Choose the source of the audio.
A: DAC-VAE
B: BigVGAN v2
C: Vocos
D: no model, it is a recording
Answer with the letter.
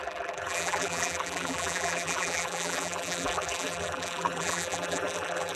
B